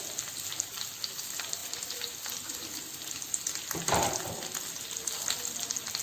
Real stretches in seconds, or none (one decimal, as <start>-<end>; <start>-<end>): 0.0-6.0